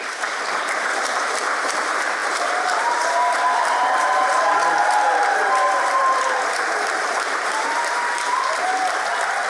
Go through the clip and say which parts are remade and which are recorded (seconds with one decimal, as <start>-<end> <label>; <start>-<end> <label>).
0.0-8.7 remade; 8.7-9.5 recorded